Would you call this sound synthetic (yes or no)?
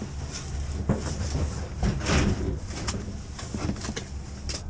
no